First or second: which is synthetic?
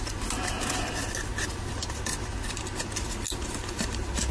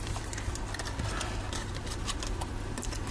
second